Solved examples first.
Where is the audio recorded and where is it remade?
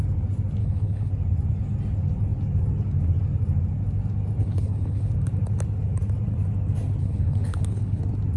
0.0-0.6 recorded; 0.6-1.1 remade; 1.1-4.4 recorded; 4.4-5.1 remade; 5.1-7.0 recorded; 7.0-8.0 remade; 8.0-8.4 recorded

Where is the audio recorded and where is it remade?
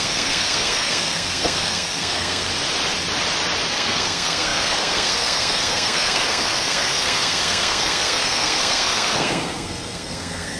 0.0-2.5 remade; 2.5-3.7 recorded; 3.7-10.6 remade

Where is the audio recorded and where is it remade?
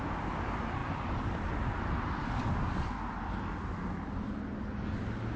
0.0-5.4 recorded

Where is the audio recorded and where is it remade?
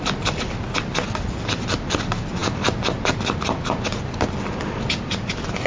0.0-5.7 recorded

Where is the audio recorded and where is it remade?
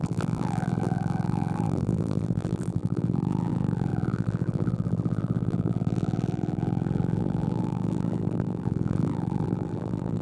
0.0-10.2 remade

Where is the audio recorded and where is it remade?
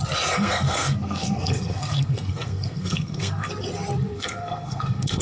0.0-0.4 recorded; 0.4-3.5 remade; 3.5-4.1 recorded; 4.1-5.2 remade